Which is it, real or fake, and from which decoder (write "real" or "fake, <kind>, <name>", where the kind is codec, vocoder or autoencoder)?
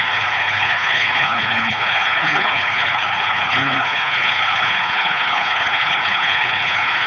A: fake, codec, HILCodec